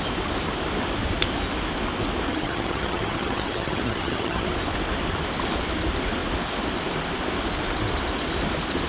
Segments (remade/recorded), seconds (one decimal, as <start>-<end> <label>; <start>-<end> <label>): 0.0-2.3 recorded; 2.3-4.5 remade; 4.5-8.9 recorded